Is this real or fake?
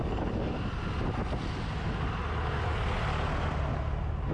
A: real